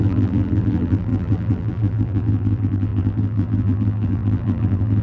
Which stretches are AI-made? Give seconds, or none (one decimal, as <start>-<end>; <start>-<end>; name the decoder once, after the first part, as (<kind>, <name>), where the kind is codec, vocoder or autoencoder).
0.0-5.0 (vocoder, BigVGAN v2)